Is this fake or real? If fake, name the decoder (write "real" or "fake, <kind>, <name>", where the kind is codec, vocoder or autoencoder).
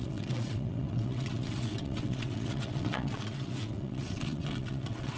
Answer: fake, vocoder, WaveNeXt